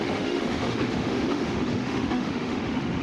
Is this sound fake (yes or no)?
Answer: yes